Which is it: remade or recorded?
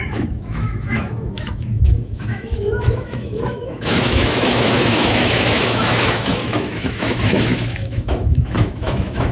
remade